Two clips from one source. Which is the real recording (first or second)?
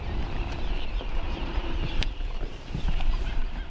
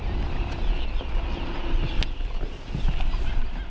second